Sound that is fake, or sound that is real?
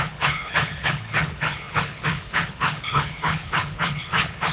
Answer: fake